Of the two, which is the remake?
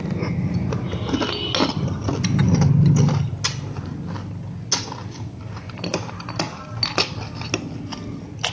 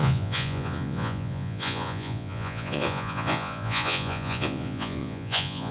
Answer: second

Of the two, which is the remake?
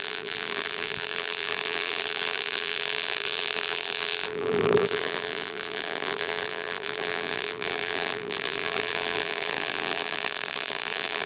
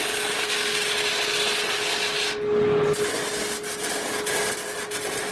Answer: first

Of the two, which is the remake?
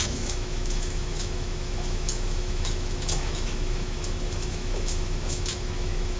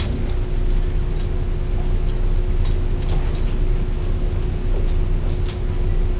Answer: first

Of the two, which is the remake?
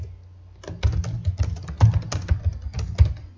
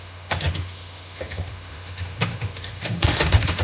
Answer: second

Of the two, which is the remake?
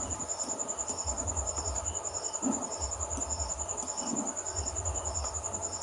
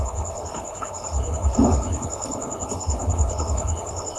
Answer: second